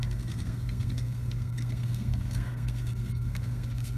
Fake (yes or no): yes